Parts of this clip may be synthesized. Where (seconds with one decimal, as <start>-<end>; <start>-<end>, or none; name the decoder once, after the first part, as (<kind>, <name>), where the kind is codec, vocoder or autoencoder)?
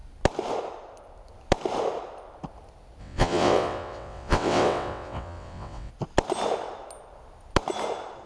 3.0-5.9 (vocoder, WaveNeXt)